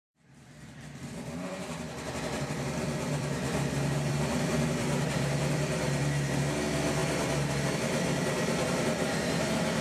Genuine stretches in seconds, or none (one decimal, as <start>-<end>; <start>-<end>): 7.0-7.5